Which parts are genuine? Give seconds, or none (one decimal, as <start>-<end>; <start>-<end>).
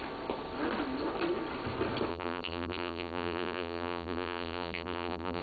0.0-2.1